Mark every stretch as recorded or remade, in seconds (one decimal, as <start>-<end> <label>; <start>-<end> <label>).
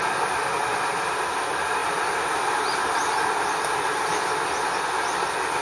0.0-5.6 recorded